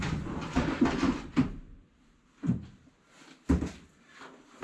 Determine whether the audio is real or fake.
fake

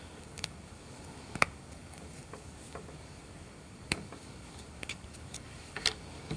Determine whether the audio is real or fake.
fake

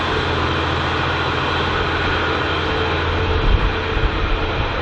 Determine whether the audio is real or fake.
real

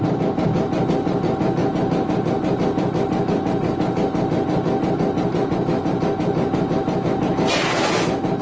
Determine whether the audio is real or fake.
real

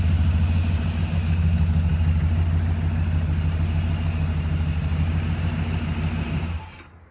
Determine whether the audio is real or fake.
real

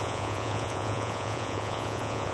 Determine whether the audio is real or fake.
fake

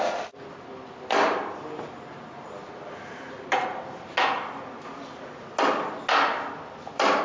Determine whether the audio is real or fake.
real